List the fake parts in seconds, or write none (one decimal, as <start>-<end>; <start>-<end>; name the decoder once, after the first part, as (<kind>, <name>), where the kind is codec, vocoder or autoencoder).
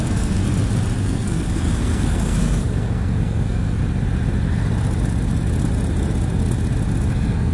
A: 0.0-0.4 (codec, SNAC); 1.0-3.8; 7.1-7.5